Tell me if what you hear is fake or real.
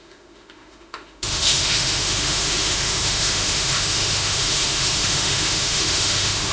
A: fake